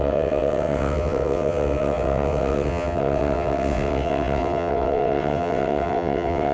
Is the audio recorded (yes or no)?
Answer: no